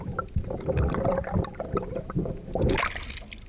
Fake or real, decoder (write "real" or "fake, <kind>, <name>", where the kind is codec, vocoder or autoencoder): real